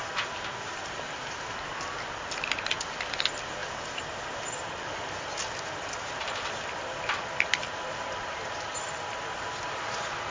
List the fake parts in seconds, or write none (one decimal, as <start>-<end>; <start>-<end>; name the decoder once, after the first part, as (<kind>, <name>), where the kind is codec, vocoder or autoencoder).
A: none